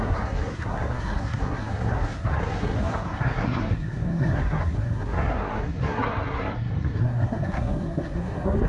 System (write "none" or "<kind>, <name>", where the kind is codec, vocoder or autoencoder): codec, SNAC